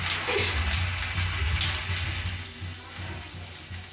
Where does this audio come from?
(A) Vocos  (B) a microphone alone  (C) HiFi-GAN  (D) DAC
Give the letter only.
B